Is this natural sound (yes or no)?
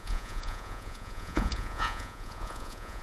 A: no